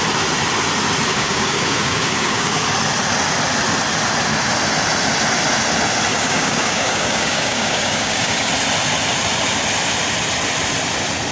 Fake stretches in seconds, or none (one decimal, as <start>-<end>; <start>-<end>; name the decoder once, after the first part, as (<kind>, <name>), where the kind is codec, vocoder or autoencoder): 1.1-2.6 (codec, DAC); 6.1-8.5